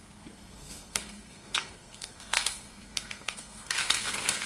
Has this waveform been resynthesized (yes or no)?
yes